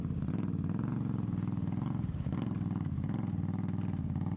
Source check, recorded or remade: remade